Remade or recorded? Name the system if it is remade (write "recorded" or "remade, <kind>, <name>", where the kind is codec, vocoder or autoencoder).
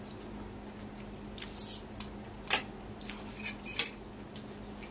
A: recorded